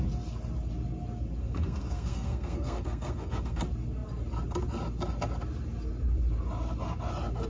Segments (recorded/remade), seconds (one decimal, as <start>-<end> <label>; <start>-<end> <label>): 0.0-1.4 recorded; 1.4-3.6 remade; 3.6-7.5 recorded

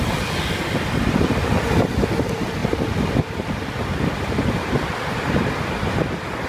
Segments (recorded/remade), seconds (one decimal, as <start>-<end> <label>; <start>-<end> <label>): 0.0-2.6 recorded; 2.6-5.1 remade; 5.1-6.5 recorded

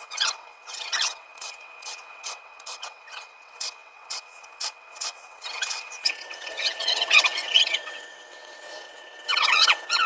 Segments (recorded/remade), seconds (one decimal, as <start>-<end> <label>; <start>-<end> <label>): 0.0-10.1 remade

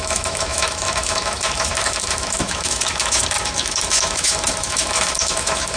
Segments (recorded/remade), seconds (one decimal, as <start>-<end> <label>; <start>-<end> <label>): 0.0-5.8 remade

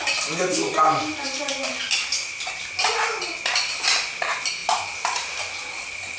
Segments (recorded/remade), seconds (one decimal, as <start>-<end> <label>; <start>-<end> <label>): 0.0-6.2 recorded